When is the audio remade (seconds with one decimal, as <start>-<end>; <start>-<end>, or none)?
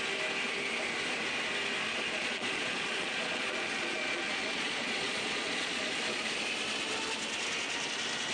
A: 2.1-6.0